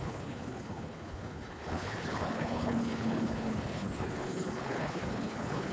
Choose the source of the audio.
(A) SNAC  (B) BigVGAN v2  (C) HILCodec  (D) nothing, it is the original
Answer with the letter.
C